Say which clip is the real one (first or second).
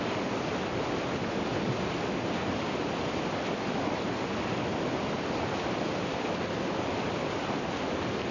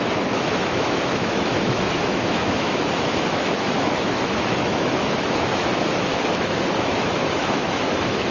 first